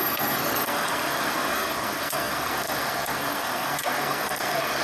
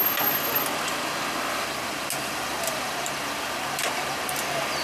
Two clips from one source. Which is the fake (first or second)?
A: first